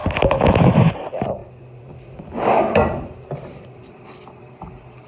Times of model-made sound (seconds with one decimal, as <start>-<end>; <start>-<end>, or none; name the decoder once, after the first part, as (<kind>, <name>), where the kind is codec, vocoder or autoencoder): 0.0-0.9 (vocoder, BigVGAN v2); 1.4-4.5